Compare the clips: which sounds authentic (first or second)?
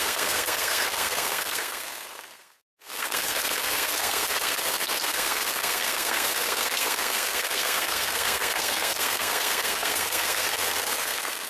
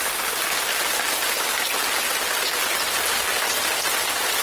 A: second